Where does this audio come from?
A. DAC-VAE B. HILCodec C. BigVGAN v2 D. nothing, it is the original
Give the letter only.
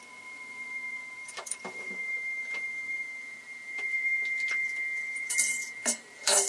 C